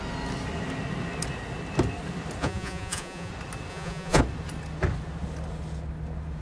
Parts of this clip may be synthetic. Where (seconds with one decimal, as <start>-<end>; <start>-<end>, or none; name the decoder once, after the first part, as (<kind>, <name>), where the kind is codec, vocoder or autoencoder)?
2.4-3.3 (vocoder, Vocos); 3.7-4.2

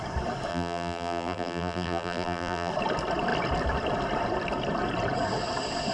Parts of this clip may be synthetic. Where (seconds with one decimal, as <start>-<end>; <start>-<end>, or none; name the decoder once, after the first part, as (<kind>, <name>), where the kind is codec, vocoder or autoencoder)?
0.5-2.7 (vocoder, BigVGAN v2)

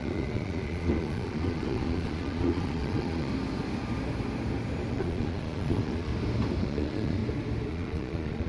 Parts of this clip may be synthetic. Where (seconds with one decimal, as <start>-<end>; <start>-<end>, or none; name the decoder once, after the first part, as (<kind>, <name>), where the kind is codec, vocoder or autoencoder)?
0.0-3.3 (vocoder, Vocos); 4.9-6.1; 6.6-7.2; 7.7-8.5